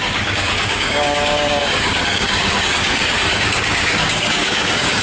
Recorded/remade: remade